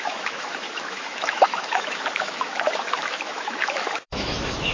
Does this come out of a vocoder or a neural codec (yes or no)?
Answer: yes